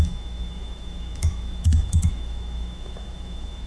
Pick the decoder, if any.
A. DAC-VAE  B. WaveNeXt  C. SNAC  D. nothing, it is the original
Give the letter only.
A